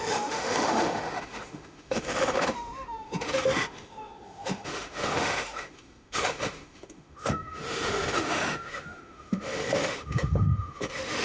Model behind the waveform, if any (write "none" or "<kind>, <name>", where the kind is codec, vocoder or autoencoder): autoencoder, DAC-VAE